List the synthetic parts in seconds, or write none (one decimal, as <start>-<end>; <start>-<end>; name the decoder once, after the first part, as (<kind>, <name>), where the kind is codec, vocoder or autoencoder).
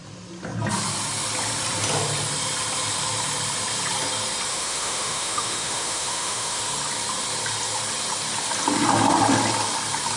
4.5-6.6 (autoencoder, DAC-VAE)